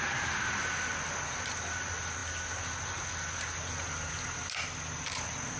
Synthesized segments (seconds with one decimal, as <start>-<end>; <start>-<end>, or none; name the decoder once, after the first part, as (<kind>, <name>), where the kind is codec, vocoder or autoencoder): none